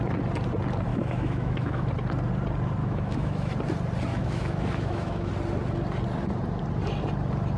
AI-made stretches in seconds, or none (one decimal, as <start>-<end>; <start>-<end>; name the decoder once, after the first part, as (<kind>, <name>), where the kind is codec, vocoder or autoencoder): 0.9-1.9 (autoencoder, DAC-VAE); 2.8-3.5; 4.1-5.3